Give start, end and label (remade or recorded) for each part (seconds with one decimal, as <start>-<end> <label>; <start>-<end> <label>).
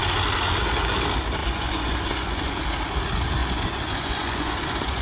0.0-1.4 recorded; 1.4-2.6 remade; 2.6-3.4 recorded; 3.4-5.0 remade